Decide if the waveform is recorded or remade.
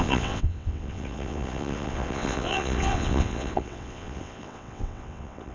remade